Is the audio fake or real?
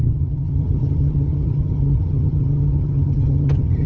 fake